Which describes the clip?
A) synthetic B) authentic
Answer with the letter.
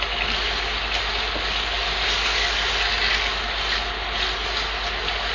B